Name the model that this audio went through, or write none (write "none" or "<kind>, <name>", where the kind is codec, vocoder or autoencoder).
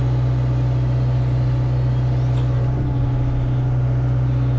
none